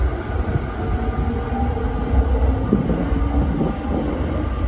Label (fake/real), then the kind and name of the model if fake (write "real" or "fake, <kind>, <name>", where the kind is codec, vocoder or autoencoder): real